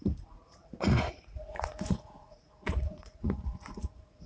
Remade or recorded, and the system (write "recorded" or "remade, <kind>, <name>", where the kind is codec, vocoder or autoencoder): remade, vocoder, Vocos